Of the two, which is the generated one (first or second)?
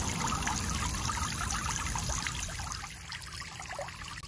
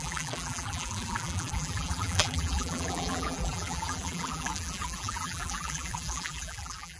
second